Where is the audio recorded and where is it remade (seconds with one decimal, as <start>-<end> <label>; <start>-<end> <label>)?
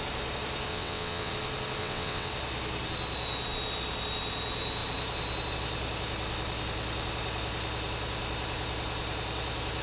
0.0-0.7 recorded; 0.7-1.3 remade; 1.3-1.8 recorded; 1.8-2.3 remade; 2.3-9.8 recorded